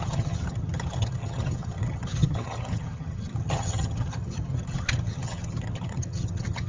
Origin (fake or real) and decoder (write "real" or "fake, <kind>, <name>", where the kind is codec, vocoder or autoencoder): fake, vocoder, HiFi-GAN